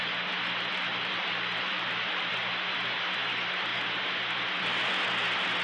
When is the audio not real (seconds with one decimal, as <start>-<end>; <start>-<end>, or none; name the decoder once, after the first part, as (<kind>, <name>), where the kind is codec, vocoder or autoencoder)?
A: 0.9-2.3 (vocoder, BigVGAN v2)